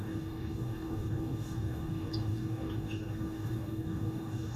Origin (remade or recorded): remade